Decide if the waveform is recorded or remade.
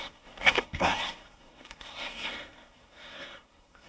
remade